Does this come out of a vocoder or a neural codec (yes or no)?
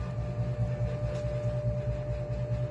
no